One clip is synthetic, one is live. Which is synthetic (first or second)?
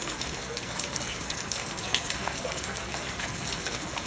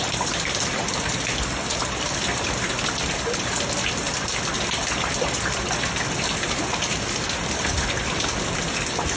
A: first